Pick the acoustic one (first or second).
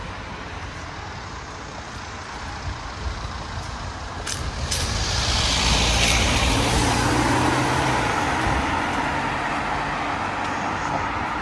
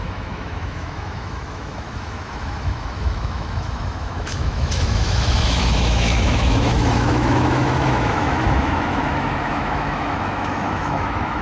first